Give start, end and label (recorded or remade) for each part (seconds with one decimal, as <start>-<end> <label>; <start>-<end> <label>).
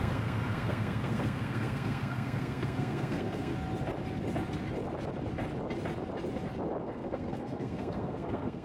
0.0-3.5 remade; 3.5-6.8 recorded; 6.8-8.6 remade